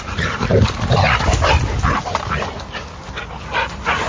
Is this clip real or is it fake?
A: real